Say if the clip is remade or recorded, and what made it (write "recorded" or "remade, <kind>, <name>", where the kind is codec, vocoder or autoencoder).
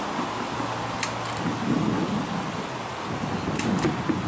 recorded